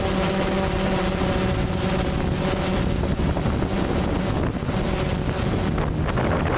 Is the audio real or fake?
real